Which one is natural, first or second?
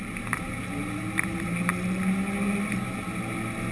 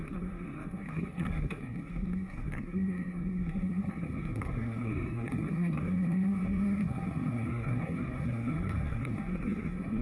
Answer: first